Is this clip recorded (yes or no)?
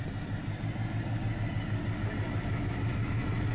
yes